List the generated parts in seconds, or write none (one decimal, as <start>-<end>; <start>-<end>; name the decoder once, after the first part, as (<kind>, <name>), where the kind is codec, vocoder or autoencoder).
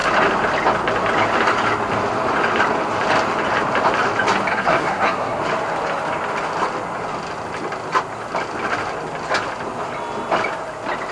4.5-5.4 (codec, SNAC)